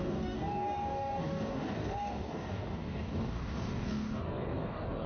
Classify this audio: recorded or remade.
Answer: remade